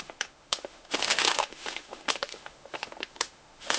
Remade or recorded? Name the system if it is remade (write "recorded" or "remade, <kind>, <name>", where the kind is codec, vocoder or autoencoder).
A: remade, autoencoder, DAC-VAE